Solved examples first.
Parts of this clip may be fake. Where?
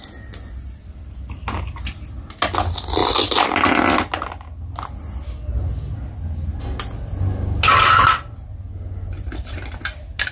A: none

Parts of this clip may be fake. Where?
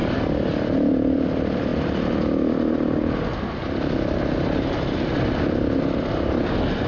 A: 0.0-1.2 (vocoder, BigVGAN v2)